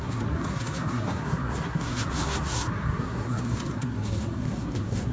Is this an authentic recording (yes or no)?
no